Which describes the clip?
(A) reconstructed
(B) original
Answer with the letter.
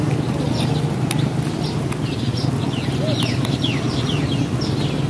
B